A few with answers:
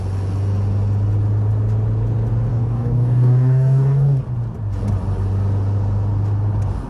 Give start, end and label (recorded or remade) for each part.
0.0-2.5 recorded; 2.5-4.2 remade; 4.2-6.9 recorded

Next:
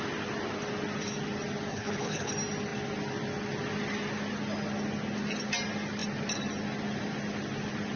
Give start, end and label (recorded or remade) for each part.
0.0-1.7 recorded; 1.7-2.3 remade; 2.3-8.0 recorded

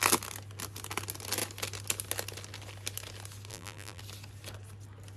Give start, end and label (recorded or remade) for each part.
0.0-3.5 recorded; 3.5-4.0 remade; 4.0-5.2 recorded